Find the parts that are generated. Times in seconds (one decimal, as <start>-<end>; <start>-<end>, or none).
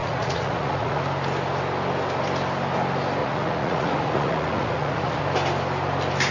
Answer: 0.0-1.0; 3.2-5.2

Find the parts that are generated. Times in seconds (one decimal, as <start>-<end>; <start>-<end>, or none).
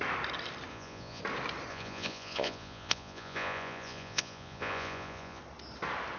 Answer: 0.7-1.2; 1.7-5.4